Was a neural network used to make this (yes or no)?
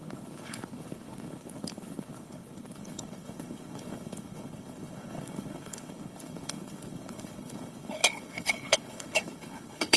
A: yes